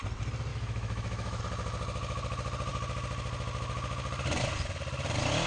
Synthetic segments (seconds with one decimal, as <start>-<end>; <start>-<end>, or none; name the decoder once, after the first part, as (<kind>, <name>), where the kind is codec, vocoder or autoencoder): 0.5-1.4 (autoencoder, DAC-VAE)

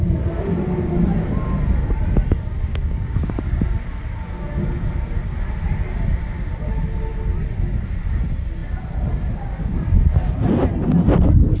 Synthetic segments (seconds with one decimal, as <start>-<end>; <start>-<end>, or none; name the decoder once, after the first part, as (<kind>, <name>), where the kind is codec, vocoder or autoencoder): 2.7-3.6 (codec, DAC)